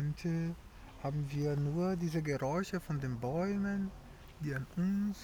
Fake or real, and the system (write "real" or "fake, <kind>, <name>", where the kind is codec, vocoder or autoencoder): real